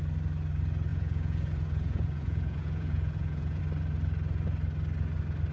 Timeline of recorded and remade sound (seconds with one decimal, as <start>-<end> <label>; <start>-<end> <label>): 0.0-0.9 recorded; 0.9-3.6 remade; 3.6-5.5 recorded